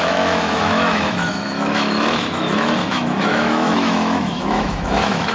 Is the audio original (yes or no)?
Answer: no